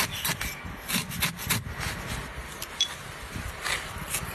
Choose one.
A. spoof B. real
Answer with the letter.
B